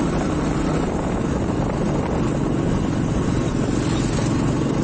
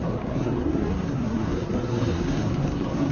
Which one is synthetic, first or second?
second